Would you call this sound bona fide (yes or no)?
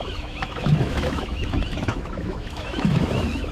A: no